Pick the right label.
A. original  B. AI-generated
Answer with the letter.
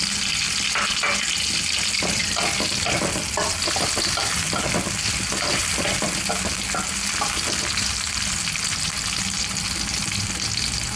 A